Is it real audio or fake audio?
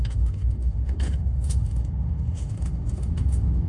fake